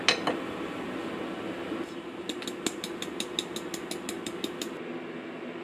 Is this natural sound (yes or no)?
yes